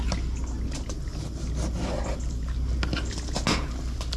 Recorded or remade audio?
recorded